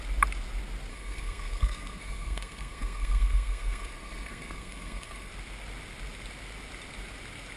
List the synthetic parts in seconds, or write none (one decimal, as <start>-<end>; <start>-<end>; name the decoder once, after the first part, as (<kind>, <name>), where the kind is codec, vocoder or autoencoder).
0.9-5.3 (codec, SNAC)